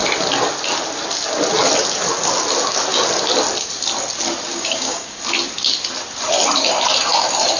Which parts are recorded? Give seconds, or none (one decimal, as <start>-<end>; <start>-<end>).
0.0-4.5; 5.2-7.6